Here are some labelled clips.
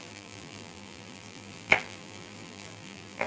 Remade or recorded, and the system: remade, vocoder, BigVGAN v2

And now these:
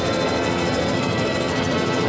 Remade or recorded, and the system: remade, codec, SNAC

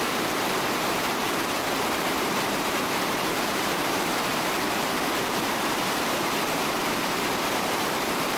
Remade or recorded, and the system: remade, vocoder, BigVGAN v2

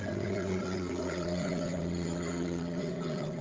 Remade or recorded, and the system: remade, vocoder, WaveNeXt